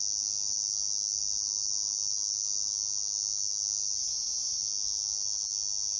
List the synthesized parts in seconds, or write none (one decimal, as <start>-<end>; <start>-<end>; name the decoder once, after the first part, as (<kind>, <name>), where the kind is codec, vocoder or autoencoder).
4.0-4.6 (vocoder, Vocos)